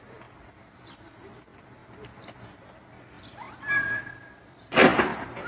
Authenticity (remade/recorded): recorded